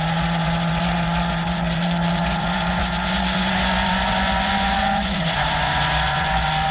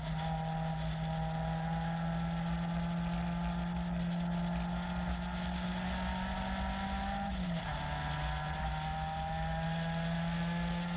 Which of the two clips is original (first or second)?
second